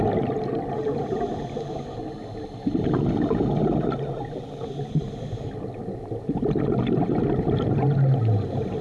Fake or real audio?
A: real